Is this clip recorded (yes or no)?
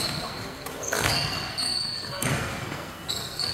no